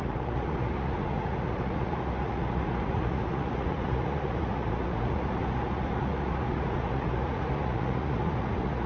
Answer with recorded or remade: remade